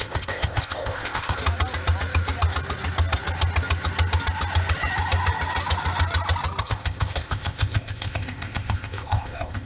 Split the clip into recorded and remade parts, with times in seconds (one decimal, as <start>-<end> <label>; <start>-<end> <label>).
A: 0.0-1.4 remade; 1.4-6.6 recorded; 6.6-9.7 remade